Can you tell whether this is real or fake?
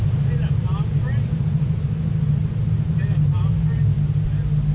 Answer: real